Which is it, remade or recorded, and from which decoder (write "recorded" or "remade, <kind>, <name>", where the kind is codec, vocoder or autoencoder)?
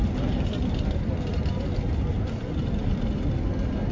recorded